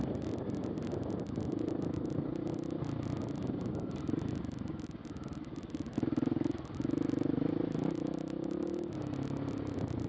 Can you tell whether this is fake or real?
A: real